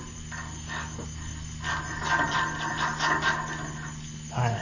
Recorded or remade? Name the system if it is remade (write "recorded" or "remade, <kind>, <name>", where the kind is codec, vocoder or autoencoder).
recorded